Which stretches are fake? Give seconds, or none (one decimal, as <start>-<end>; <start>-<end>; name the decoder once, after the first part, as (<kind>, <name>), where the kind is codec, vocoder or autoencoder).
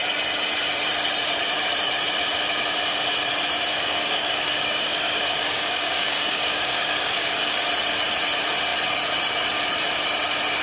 3.7-7.7 (codec, DAC)